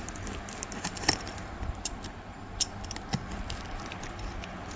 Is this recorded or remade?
recorded